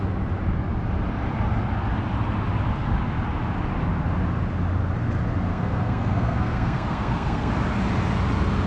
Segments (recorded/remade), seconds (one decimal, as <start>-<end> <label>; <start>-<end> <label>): 0.0-5.5 recorded; 5.5-7.5 remade; 7.5-8.7 recorded